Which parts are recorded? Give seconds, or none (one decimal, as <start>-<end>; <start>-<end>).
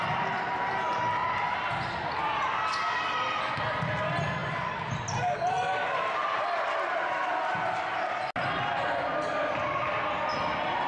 0.0-10.9